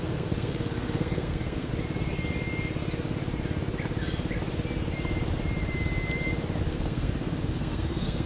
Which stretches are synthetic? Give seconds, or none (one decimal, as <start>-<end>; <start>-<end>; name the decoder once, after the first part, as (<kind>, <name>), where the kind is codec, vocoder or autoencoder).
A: 0.0-1.7 (codec, SNAC); 6.7-8.3